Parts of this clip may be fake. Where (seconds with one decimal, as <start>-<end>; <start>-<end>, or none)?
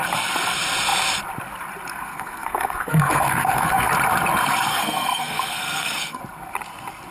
1.9-3.9; 4.7-6.2